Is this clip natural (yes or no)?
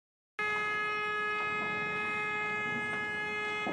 yes